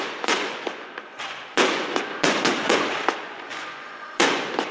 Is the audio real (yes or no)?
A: no